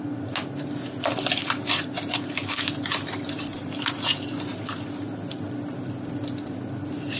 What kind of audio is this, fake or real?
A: real